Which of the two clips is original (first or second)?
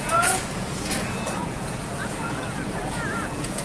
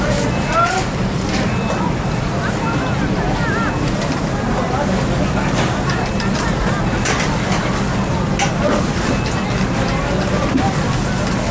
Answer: second